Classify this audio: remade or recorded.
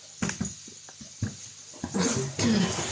recorded